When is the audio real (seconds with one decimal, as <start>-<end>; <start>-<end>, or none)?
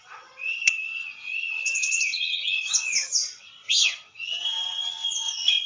none